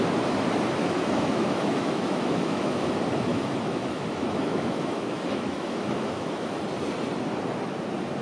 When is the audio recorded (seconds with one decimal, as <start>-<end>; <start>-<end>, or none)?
0.0-0.8; 2.9-3.3; 6.6-8.2